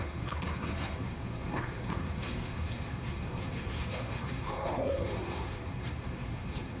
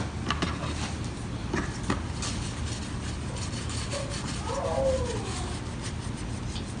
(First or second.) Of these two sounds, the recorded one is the second